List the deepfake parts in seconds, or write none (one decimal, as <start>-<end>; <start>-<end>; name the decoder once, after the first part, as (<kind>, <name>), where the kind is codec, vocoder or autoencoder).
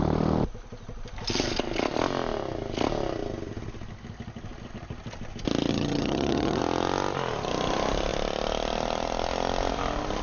5.7-6.6 (vocoder, HiFi-GAN)